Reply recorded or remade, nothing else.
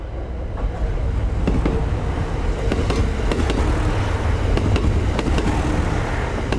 recorded